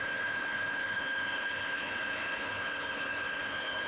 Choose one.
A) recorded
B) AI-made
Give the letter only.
B